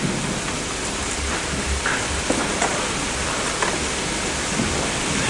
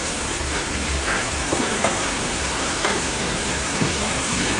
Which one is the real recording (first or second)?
first